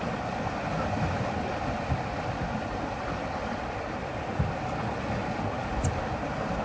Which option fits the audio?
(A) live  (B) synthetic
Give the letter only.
A